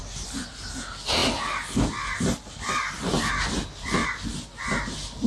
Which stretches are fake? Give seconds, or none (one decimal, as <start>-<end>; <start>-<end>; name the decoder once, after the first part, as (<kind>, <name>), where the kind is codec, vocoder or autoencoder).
none